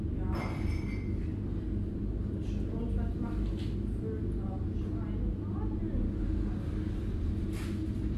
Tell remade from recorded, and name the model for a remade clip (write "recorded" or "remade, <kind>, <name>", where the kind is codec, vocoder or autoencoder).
recorded